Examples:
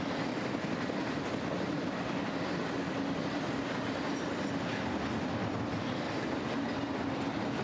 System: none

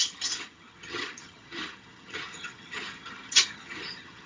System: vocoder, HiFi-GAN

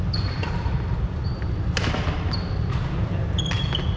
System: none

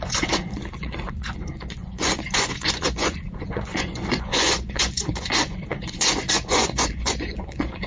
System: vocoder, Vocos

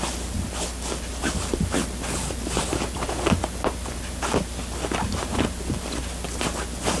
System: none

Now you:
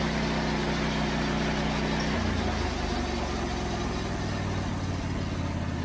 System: none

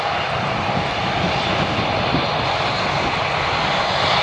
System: none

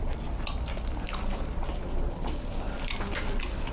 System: none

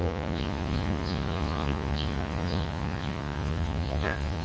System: vocoder, Vocos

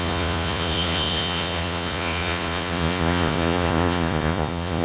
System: vocoder, Vocos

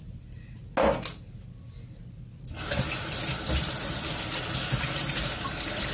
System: none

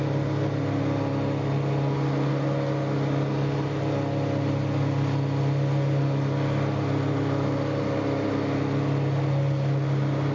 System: none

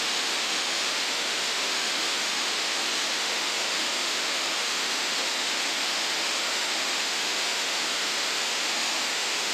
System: autoencoder, DAC-VAE